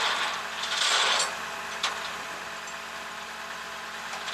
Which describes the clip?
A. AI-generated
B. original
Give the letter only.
B